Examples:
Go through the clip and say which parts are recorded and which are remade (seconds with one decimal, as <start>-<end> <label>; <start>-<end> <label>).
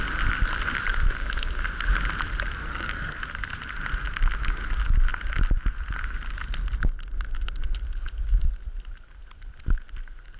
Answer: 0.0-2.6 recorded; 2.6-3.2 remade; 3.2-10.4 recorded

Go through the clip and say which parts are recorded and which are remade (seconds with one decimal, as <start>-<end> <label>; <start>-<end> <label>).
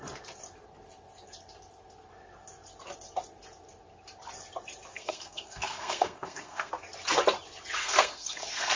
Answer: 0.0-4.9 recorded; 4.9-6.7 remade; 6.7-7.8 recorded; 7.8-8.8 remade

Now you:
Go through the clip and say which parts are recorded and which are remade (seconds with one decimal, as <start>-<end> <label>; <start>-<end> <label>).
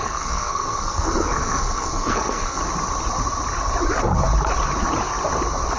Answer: 0.0-2.6 remade; 2.6-5.8 recorded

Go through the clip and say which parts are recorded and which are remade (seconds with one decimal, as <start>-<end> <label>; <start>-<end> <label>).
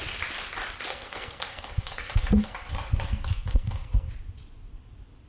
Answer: 0.0-0.9 recorded; 0.9-4.1 remade; 4.1-5.3 recorded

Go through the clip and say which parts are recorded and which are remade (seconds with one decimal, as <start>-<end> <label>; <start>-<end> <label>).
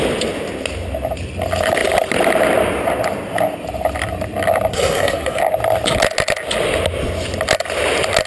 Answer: 0.0-4.7 recorded; 4.7-5.4 remade; 5.4-8.3 recorded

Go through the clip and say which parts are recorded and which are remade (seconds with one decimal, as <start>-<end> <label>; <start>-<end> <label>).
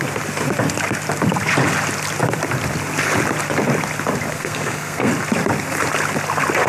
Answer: 0.0-4.3 recorded; 4.3-5.1 remade; 5.1-6.7 recorded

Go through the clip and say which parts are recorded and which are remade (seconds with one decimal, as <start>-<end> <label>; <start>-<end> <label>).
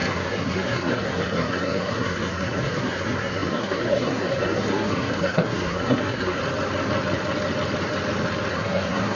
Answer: 0.0-6.4 remade; 6.4-8.5 recorded; 8.5-9.2 remade